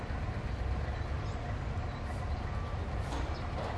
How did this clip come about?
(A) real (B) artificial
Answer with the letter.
A